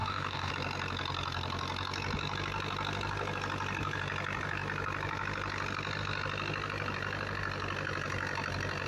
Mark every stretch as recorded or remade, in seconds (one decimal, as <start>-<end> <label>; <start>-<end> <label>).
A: 0.0-0.5 remade; 0.5-8.9 recorded